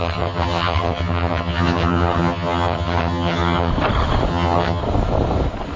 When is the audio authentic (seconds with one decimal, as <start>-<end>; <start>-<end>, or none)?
3.7-4.3; 4.8-5.8